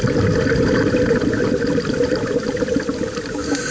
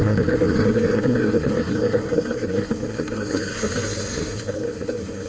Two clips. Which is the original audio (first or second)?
first